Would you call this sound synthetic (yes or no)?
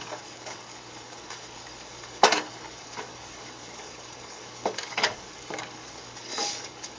yes